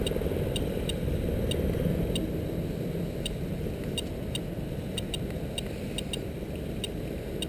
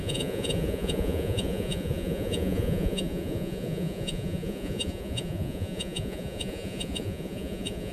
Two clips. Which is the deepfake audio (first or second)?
second